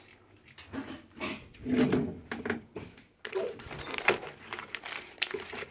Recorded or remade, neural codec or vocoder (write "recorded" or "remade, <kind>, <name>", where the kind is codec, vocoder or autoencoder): recorded